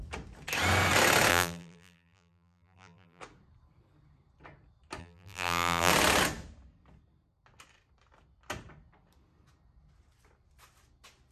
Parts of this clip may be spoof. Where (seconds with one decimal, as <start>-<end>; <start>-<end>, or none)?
1.3-3.2; 5.0-5.9